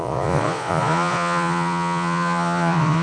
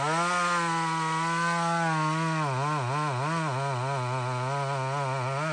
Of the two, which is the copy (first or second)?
first